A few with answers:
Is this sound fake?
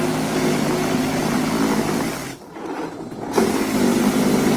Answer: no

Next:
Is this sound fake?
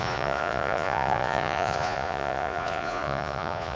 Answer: yes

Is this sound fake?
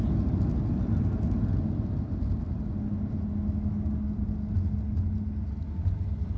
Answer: no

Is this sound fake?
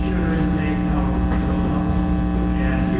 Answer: no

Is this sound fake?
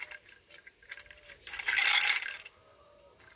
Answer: no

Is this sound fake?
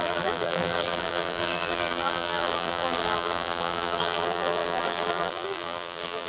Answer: yes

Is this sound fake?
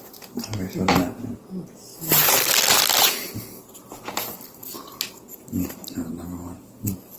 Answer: no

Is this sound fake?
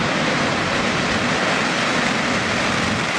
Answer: no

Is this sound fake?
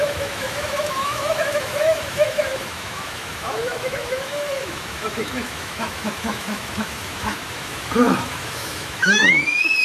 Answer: yes